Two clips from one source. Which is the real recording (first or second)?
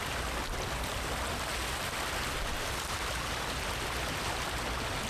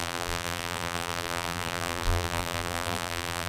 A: first